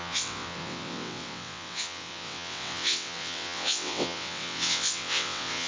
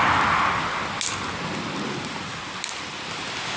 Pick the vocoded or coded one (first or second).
first